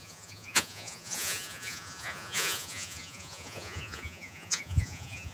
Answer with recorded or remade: remade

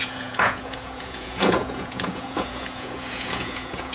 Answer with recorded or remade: remade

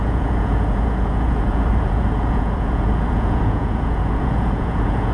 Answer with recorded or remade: remade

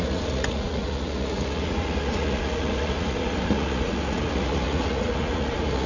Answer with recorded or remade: remade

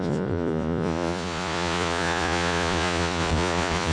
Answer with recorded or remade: remade